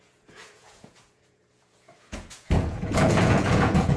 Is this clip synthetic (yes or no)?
yes